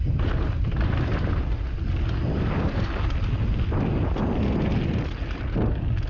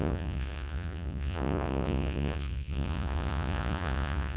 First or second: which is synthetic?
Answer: second